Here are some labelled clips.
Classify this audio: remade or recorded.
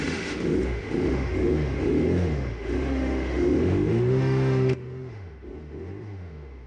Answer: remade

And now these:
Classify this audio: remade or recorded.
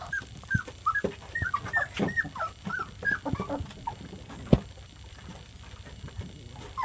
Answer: remade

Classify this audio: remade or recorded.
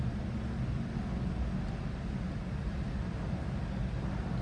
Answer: recorded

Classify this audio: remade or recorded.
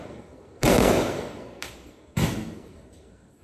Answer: remade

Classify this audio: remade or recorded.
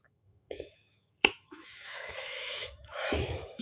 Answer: remade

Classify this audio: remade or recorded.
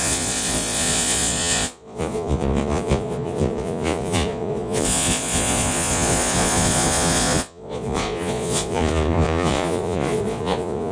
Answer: remade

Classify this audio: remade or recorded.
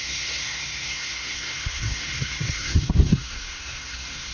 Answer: remade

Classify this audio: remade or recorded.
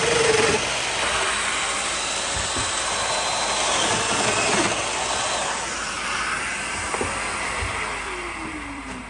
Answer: remade